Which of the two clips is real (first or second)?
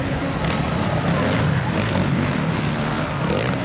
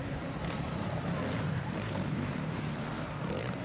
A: first